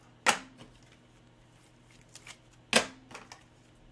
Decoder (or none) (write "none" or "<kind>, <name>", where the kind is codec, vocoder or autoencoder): none